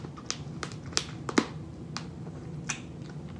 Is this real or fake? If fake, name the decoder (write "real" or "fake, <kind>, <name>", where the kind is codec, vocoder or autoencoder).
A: real